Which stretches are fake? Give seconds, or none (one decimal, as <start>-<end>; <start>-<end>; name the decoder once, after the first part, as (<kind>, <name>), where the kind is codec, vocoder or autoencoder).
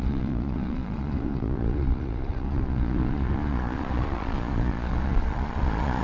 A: 0.0-6.0 (vocoder, Vocos)